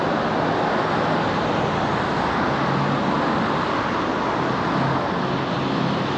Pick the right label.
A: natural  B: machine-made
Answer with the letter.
A